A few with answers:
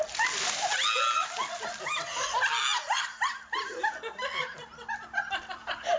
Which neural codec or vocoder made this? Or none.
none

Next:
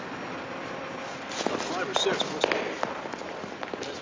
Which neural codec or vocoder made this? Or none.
none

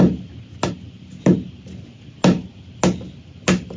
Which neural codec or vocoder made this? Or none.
none